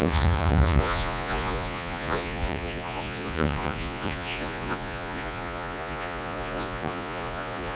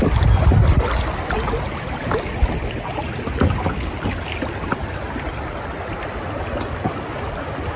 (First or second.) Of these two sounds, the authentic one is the second